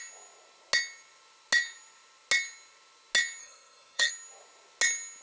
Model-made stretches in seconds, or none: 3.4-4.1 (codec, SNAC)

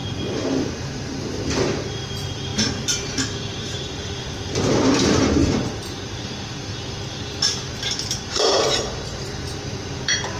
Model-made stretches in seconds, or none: 0.0-10.4 (vocoder, BigVGAN v2)

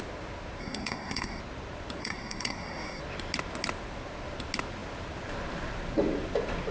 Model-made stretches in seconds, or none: 0.6-1.4 (codec, SNAC); 2.0-3.0